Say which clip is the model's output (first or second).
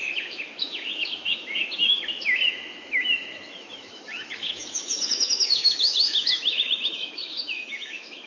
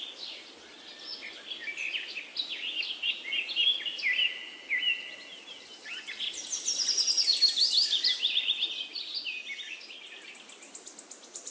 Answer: first